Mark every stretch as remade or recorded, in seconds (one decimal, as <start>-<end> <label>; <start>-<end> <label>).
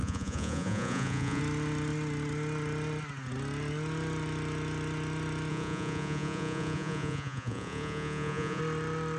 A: 0.0-1.4 remade; 1.4-5.5 recorded; 5.5-8.6 remade; 8.6-9.2 recorded